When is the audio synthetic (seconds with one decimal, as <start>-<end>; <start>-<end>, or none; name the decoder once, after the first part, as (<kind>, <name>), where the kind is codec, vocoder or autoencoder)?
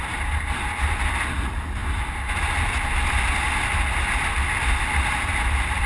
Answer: none